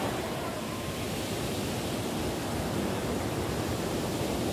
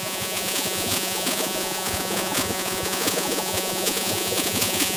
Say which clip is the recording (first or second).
first